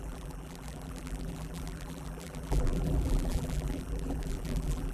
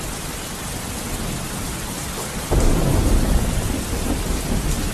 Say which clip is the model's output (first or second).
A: first